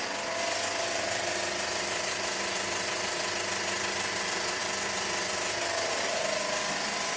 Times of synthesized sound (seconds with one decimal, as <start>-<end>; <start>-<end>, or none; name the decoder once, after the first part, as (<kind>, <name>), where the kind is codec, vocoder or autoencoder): none